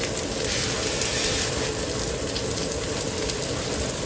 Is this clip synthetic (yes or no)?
no